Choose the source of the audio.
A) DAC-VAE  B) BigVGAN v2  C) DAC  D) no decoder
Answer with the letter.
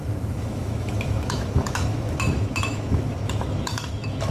A